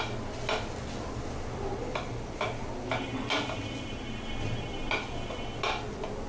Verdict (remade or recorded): recorded